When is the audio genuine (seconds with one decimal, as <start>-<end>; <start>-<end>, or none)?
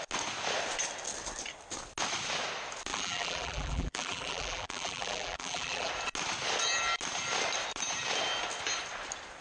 0.0-2.9; 5.9-9.4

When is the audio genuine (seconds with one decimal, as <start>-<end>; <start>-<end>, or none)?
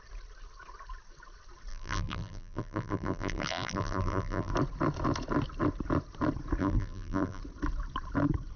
0.0-1.7; 4.5-6.6; 7.4-8.6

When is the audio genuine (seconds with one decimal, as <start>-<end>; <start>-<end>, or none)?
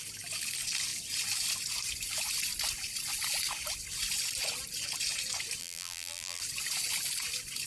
0.0-5.6; 6.4-7.7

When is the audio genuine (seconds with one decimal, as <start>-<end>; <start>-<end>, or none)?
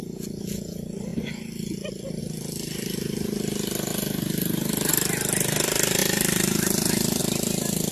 0.0-3.9; 4.9-6.0; 7.2-7.9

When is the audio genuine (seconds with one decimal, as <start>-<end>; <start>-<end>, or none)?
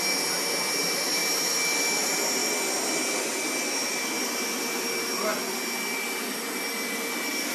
0.0-7.5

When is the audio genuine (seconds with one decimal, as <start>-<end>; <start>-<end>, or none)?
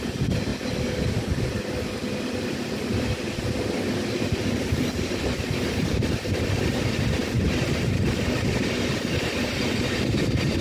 0.5-4.2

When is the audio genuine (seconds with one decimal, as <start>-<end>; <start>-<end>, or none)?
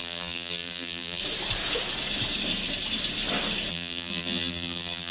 1.2-3.7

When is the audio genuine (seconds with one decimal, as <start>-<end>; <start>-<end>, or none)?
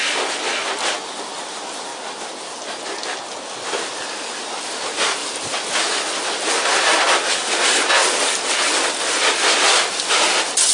0.0-1.9; 2.6-5.2; 7.3-8.0; 9.5-10.7